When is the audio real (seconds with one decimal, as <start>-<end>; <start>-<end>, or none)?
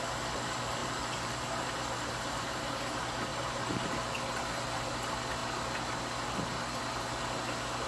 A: 0.0-0.8; 2.8-3.3; 4.2-7.9